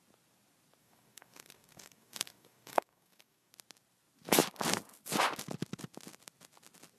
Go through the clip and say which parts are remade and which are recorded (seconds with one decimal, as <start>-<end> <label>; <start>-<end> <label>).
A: 0.0-0.8 recorded; 0.8-3.5 remade; 3.5-7.0 recorded